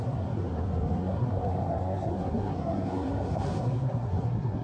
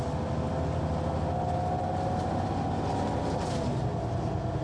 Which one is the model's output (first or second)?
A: first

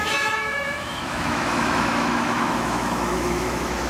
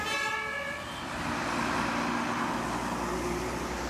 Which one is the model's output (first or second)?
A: first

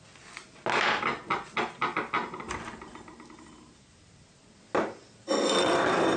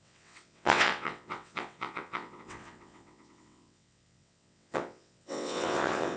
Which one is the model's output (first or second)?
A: second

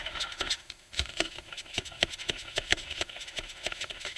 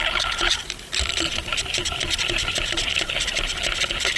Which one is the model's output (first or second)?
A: first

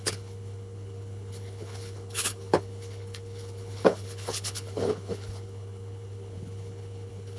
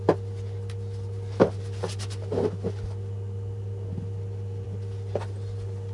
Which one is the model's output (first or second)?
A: first